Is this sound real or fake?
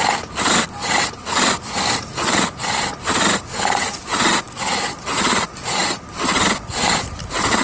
real